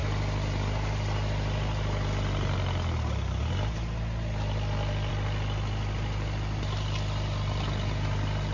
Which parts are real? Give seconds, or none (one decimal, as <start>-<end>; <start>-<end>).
0.0-8.5